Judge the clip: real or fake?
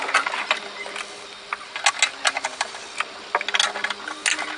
real